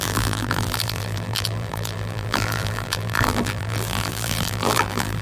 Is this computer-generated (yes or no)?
yes